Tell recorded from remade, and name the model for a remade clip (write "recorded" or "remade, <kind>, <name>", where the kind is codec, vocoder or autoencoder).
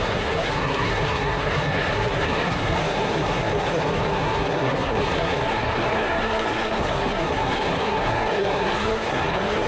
remade, codec, SNAC